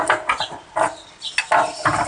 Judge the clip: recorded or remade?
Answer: recorded